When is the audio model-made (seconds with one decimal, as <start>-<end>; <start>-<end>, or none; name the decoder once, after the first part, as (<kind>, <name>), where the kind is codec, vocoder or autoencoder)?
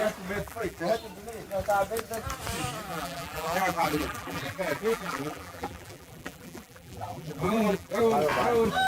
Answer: 0.4-0.9 (vocoder, BigVGAN v2); 2.9-8.0